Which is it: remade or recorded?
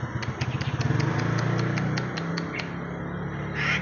recorded